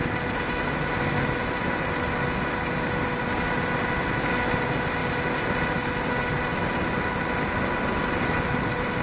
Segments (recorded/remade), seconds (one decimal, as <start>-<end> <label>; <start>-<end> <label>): 0.0-9.0 recorded